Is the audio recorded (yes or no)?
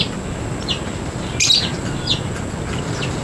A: yes